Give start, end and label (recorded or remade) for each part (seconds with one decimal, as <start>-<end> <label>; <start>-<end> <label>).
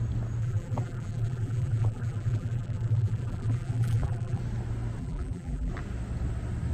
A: 0.0-0.4 recorded; 0.4-4.4 remade; 4.4-5.0 recorded; 5.0-5.7 remade; 5.7-6.7 recorded